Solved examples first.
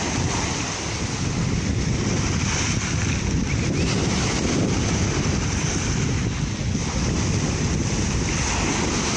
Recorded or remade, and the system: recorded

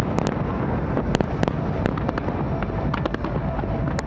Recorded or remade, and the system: recorded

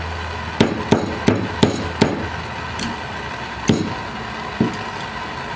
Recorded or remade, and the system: recorded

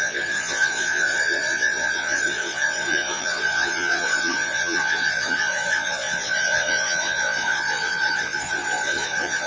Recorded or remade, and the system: remade, vocoder, Vocos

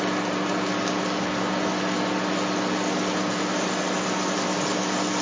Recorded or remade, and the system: recorded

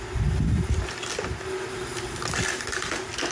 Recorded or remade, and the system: recorded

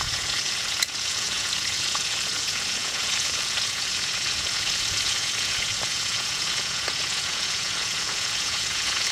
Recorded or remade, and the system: remade, vocoder, Vocos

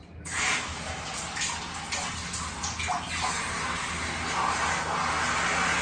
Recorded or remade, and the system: recorded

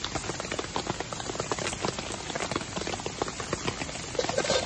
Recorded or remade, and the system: recorded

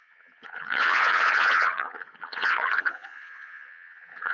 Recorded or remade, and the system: remade, vocoder, Vocos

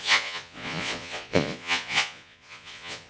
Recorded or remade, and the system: remade, vocoder, Vocos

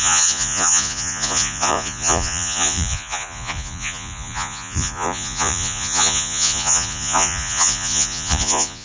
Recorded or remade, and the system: remade, vocoder, Vocos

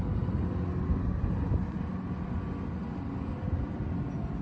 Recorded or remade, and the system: recorded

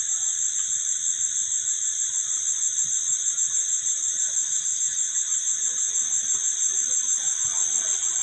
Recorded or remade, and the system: recorded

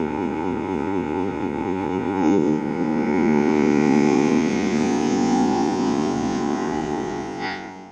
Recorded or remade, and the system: remade, vocoder, Vocos